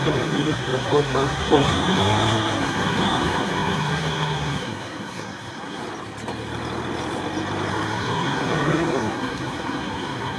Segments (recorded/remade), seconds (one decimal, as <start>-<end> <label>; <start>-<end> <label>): 0.0-5.8 remade; 5.8-7.7 recorded; 7.7-10.4 remade